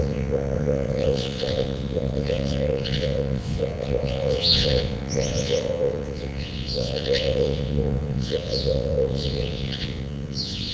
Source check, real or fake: fake